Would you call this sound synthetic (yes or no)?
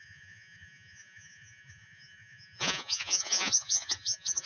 yes